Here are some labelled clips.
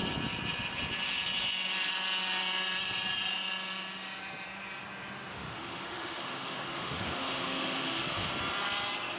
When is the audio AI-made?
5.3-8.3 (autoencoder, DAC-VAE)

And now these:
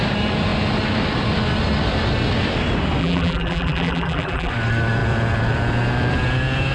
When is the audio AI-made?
3.0-4.5 (vocoder, BigVGAN v2)

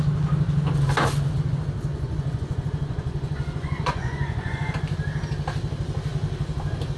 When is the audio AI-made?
1.9-4.7 (vocoder, Vocos)

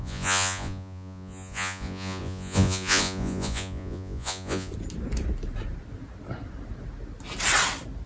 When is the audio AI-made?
0.0-4.7 (vocoder, Vocos)